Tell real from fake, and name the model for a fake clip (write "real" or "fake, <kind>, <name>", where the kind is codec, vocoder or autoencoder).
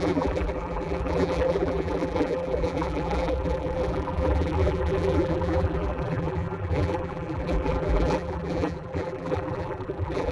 fake, vocoder, BigVGAN v2